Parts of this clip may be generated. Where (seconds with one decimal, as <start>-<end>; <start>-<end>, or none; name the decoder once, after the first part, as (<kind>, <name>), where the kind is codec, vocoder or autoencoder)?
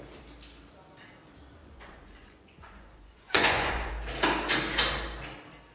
1.6-3.9 (vocoder, Vocos)